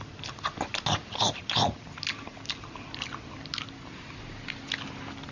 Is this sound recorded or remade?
recorded